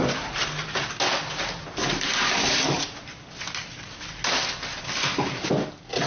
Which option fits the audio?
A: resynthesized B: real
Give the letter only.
B